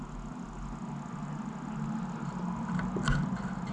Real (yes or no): yes